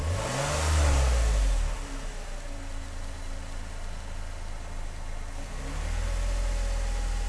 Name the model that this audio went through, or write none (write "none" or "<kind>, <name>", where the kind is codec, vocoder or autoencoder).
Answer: none